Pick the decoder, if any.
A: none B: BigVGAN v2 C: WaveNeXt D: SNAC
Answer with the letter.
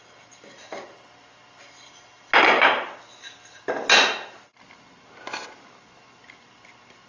A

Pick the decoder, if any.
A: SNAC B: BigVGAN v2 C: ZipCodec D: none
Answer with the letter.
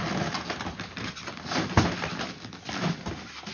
D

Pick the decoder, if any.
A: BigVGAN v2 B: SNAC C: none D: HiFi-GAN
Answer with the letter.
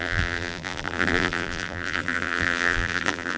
A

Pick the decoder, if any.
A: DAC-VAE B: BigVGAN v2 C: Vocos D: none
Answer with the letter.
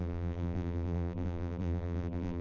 B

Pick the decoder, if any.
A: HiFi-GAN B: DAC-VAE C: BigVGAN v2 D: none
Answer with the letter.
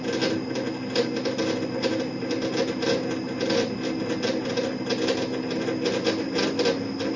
D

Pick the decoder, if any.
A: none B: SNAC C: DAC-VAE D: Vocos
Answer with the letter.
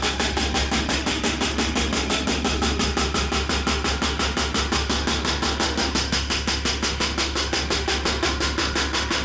C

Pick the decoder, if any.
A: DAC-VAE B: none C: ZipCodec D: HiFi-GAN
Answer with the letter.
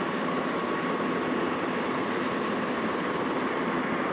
B